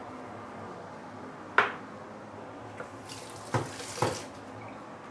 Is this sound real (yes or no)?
yes